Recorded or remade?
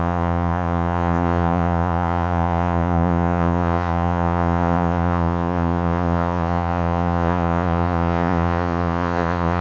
remade